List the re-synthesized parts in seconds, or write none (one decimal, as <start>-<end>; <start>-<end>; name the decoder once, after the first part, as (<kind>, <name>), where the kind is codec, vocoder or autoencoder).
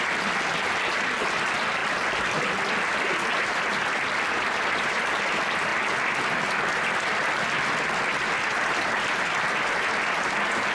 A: none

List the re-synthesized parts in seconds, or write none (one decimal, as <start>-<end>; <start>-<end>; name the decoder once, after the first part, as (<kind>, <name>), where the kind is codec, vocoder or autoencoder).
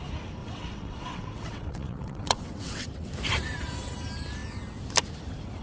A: 0.4-3.1 (vocoder, WaveNeXt)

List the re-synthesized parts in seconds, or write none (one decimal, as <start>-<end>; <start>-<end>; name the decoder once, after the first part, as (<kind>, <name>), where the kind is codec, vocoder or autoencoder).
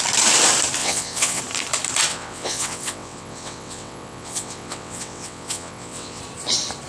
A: 0.8-1.4 (vocoder, WaveNeXt); 2.1-6.2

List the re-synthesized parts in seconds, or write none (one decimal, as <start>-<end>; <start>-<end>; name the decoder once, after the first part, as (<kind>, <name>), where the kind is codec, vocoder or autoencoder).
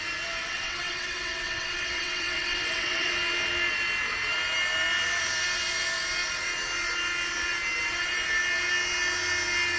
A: 0.5-3.1 (vocoder, WaveNeXt)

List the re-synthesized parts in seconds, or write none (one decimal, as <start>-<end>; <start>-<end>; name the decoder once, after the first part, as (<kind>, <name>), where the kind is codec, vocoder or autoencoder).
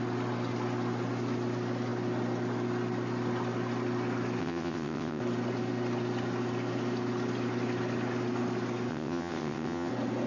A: 4.4-5.2 (vocoder, WaveNeXt); 8.9-9.9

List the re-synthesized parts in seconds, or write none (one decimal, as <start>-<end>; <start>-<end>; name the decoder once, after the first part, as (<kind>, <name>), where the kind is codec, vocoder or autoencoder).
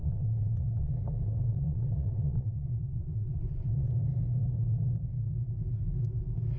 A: 0.0-0.9 (vocoder, WaveNeXt); 1.5-3.9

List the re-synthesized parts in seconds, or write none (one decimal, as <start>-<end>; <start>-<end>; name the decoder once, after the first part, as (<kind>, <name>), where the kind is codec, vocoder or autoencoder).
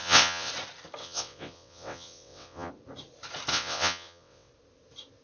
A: 0.0-0.5 (vocoder, WaveNeXt); 1.0-2.7; 3.5-4.5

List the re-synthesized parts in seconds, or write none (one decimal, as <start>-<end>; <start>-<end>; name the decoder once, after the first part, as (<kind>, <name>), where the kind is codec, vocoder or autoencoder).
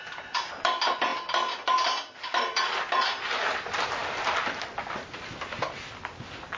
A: none